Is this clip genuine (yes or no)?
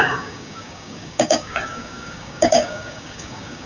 no